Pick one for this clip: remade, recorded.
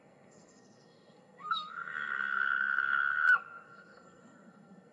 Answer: remade